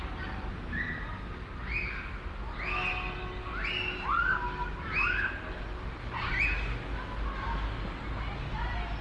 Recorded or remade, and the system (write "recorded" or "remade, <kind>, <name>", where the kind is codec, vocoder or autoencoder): recorded